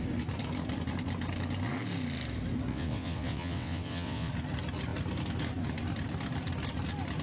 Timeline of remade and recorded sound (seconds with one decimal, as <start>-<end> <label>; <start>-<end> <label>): 0.0-2.7 recorded; 2.7-4.3 remade; 4.3-7.2 recorded